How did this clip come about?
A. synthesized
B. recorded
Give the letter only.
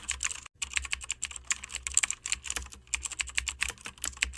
B